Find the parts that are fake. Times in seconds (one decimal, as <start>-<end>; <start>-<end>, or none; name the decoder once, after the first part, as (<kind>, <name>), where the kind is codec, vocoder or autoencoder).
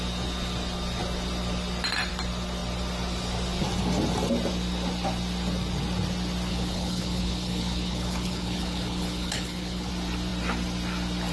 6.5-9.9 (codec, HILCodec)